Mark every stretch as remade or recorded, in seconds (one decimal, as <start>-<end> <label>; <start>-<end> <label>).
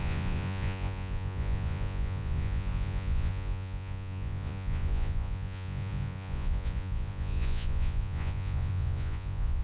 0.0-9.6 remade